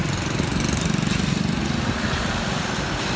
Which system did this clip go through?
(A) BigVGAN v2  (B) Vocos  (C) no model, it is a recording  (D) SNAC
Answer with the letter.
C